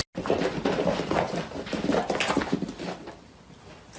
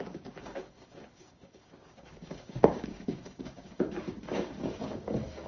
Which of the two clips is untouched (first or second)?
first